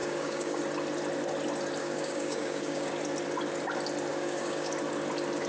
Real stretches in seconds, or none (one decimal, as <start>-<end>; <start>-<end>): 0.6-1.8; 2.9-4.1; 4.7-5.5